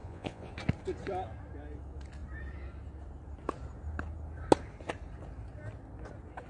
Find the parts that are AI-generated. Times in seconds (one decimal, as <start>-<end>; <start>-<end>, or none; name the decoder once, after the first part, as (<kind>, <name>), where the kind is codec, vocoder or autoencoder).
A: 0.0-0.5 (vocoder, Vocos)

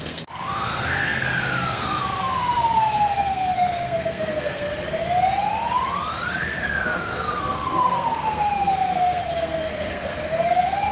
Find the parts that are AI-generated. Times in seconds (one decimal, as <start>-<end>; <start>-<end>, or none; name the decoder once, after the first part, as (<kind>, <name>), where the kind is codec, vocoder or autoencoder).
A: 0.0-4.7 (codec, SNAC); 6.3-10.9

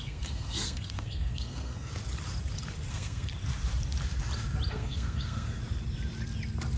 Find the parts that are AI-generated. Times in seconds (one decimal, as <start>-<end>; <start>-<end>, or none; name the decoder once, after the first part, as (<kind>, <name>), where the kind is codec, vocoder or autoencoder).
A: 0.0-1.9 (codec, SNAC); 2.9-3.3; 4.7-5.6